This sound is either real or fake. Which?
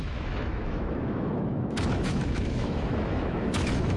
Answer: fake